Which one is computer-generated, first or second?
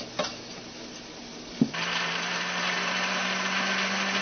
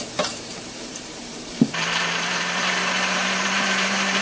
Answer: second